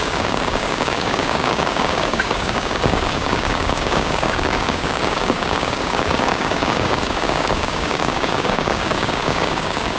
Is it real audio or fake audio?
fake